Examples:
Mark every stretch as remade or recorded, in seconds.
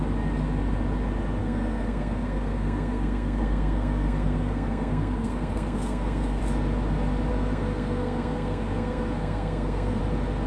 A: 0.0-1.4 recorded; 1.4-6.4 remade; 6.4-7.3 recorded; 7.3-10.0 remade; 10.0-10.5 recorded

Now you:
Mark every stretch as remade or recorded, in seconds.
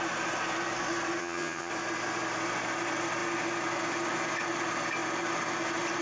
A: 0.0-1.2 recorded; 1.2-1.7 remade; 1.7-6.0 recorded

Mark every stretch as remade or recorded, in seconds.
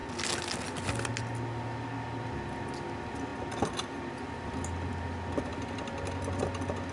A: 0.0-6.9 recorded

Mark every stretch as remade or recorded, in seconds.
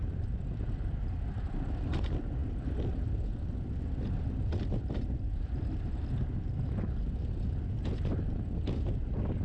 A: 0.0-9.4 recorded